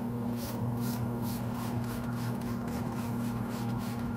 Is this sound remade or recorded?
remade